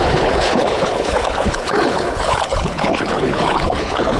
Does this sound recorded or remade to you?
remade